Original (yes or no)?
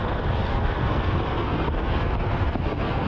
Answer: no